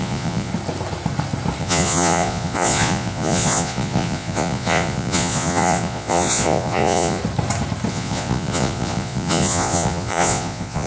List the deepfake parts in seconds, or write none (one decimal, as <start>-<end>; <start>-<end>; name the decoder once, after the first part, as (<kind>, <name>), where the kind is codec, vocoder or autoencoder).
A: 0.0-0.5 (vocoder, Vocos); 1.6-7.2; 7.9-10.9